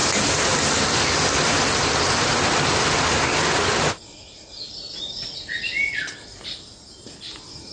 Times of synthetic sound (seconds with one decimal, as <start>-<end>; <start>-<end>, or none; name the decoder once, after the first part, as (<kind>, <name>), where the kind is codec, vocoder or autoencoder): none